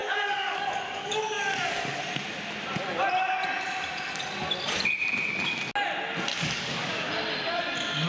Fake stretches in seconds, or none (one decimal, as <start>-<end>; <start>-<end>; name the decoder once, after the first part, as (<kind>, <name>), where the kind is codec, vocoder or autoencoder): 0.0-2.0 (codec, DAC); 6.3-7.1